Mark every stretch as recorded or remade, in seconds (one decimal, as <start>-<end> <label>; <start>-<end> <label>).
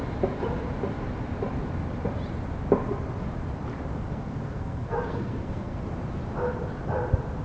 0.0-3.9 recorded; 3.9-5.8 remade; 5.8-7.4 recorded